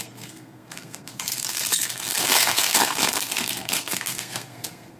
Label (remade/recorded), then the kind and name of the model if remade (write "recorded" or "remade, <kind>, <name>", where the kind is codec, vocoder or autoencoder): remade, codec, SNAC